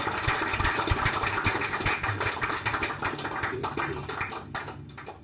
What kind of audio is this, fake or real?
real